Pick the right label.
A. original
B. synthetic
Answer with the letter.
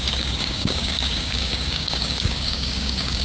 B